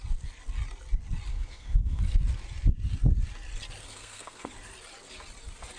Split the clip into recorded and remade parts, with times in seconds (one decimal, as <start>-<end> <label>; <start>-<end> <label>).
0.0-1.3 recorded; 1.3-2.0 remade; 2.0-3.8 recorded; 3.8-4.5 remade; 4.5-5.8 recorded